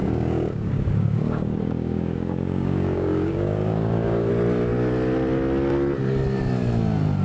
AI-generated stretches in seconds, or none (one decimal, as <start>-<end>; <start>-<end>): 0.0-4.3